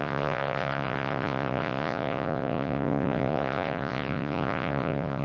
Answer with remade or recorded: remade